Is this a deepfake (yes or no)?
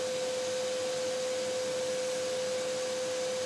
no